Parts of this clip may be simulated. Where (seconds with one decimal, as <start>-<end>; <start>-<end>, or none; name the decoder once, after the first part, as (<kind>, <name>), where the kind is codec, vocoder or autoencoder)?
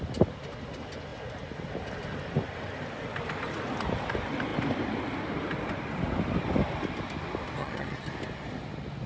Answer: 7.6-8.1 (vocoder, HiFi-GAN)